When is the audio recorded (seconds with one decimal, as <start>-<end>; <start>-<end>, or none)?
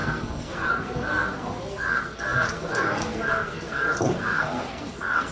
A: none